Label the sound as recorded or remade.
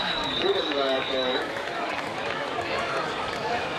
remade